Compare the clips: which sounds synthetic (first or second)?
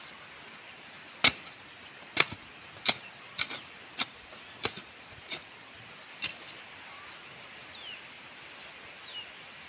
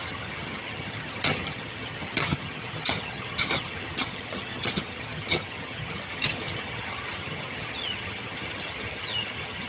second